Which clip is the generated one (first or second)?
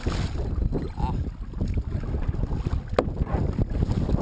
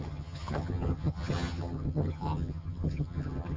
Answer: second